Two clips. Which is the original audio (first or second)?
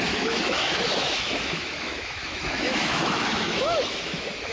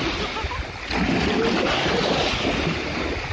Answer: second